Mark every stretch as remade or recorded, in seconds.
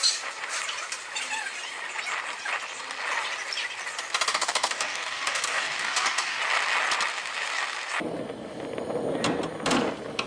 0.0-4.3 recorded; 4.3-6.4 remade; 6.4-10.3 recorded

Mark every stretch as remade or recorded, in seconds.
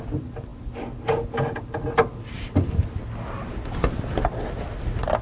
0.0-5.2 recorded